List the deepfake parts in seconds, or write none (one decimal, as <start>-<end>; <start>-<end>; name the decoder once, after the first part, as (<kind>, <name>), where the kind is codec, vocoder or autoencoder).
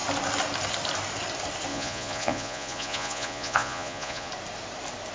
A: 1.7-4.3 (vocoder, Vocos)